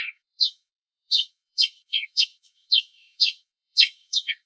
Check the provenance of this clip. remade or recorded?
remade